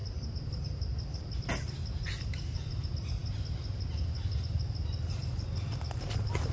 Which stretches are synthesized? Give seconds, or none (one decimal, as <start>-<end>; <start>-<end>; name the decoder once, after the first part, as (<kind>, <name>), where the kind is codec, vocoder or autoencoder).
none